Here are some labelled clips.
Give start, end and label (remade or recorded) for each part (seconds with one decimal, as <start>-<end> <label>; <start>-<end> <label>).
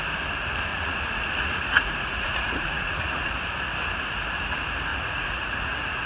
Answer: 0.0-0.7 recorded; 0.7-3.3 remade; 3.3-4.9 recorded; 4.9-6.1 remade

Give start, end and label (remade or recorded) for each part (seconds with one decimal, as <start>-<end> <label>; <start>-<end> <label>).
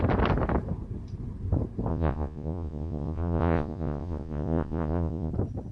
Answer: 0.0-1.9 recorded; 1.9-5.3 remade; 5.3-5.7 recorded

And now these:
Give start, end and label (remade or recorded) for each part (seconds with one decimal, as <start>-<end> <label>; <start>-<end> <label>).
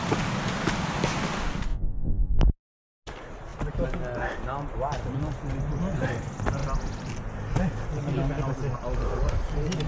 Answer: 0.0-1.7 recorded; 1.7-2.4 remade; 2.4-9.9 recorded